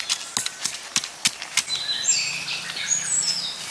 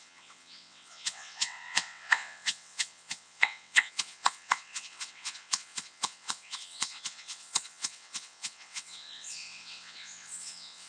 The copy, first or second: second